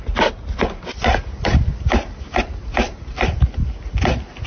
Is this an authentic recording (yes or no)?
yes